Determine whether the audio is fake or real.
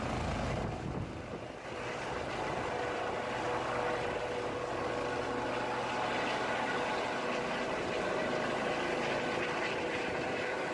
real